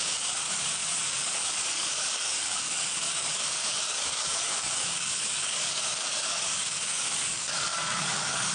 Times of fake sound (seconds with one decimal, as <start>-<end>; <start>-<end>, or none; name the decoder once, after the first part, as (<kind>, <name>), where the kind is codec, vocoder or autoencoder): 0.0-8.5 (codec, DAC)